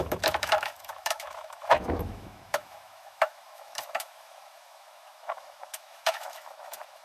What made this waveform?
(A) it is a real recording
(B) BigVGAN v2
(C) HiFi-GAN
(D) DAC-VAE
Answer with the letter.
D